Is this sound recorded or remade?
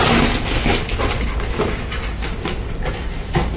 recorded